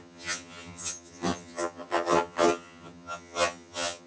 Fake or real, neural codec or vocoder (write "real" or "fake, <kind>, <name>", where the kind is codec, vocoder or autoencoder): fake, vocoder, HiFi-GAN